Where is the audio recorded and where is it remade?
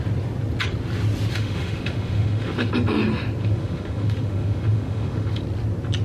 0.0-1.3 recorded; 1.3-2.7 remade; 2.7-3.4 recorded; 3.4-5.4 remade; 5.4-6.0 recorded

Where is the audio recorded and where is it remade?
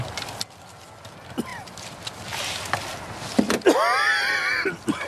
0.0-1.5 recorded; 1.5-2.3 remade; 2.3-5.1 recorded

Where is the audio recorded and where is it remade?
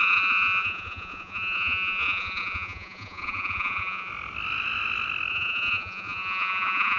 0.0-4.1 remade; 4.1-5.3 recorded; 5.3-7.0 remade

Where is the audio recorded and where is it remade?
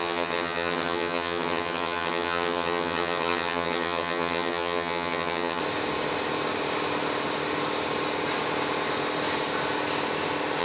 0.0-5.6 remade; 5.6-10.6 recorded